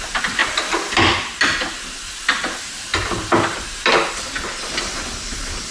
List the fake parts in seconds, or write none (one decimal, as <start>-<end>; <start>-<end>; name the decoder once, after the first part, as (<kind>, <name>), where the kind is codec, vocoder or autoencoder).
none